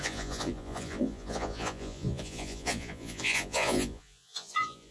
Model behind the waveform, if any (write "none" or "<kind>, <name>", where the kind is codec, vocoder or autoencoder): vocoder, Vocos